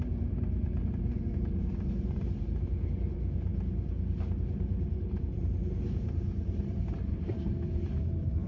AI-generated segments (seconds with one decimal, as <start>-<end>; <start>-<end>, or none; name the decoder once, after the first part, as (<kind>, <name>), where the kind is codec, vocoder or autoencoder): 0.0-3.5 (vocoder, BigVGAN v2); 4.4-8.5